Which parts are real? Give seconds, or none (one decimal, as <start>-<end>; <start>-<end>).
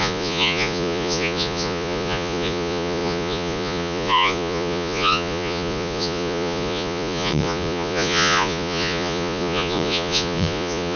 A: none